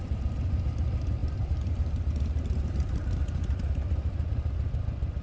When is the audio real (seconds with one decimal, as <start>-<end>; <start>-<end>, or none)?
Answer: 0.0-1.2; 4.3-5.2